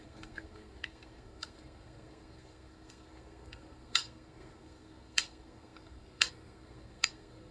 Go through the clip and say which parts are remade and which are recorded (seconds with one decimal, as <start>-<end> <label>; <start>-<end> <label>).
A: 0.0-7.5 remade